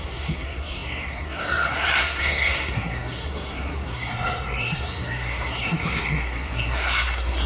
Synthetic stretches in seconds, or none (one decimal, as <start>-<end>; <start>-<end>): 0.0-7.5